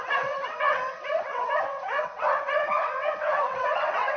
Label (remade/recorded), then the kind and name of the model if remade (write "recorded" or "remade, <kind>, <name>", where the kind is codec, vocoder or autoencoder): remade, vocoder, WaveNeXt